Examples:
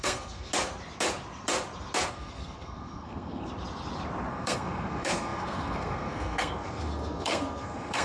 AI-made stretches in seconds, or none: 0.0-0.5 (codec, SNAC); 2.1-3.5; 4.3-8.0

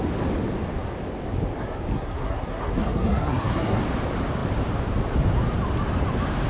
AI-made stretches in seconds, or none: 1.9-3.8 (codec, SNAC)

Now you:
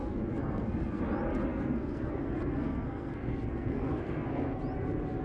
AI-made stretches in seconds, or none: 0.0-1.0 (codec, SNAC); 1.5-4.6

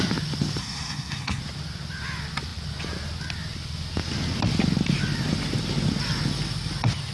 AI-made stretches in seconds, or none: 0.6-1.4 (codec, SNAC)

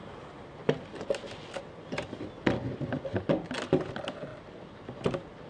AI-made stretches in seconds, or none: none

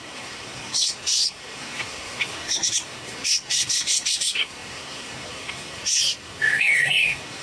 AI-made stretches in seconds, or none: 0.0-7.4 (codec, SNAC)